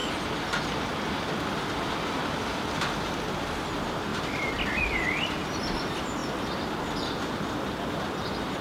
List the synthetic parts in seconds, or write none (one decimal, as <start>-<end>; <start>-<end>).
0.0-0.6; 4.1-5.8